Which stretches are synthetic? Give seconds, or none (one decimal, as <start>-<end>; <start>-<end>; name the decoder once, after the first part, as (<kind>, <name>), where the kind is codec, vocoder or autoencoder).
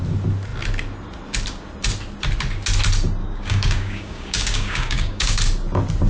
3.2-5.4 (codec, DAC)